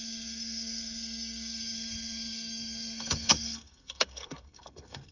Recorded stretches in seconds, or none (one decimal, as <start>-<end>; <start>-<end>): none